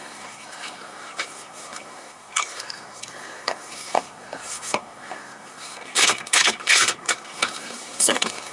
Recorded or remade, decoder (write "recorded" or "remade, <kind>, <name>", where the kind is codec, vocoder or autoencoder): remade, codec, SNAC